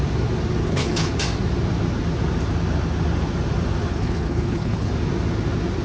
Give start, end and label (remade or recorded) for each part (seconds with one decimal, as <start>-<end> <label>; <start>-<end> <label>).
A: 0.0-0.6 recorded; 0.6-1.1 remade; 1.1-3.9 recorded; 3.9-4.9 remade; 4.9-5.8 recorded